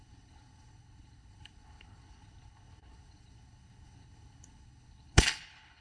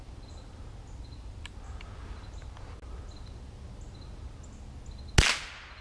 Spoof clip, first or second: first